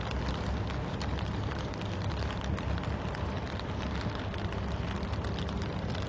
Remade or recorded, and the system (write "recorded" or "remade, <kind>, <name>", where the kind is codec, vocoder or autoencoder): recorded